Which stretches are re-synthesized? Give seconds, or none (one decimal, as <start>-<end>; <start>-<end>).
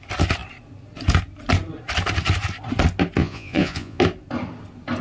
3.2-4.0